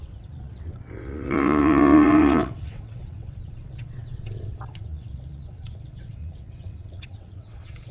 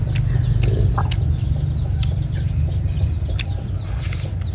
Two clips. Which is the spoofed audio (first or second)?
first